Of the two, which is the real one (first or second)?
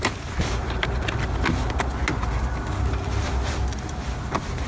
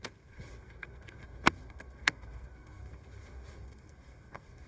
first